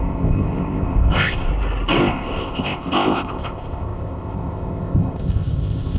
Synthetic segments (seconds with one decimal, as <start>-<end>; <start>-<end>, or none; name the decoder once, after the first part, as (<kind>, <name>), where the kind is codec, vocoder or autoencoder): 0.0-1.5 (codec, ZipCodec); 2.0-6.0